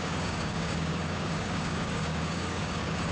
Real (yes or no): no